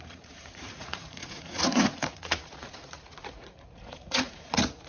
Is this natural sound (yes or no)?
no